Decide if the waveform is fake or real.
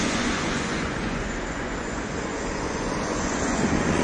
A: fake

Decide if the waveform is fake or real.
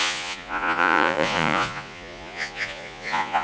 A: fake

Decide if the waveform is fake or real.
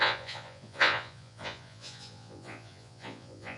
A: fake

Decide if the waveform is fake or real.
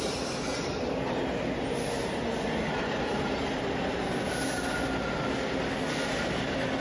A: real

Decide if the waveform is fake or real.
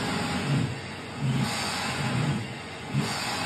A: fake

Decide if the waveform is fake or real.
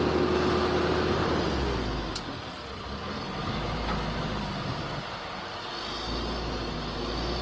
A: real